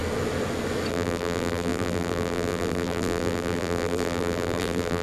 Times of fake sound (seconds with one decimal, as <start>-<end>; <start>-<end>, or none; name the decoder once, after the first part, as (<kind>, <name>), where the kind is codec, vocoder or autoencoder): 0.9-5.0 (vocoder, BigVGAN v2)